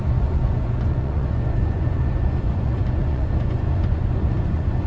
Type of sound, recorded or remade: remade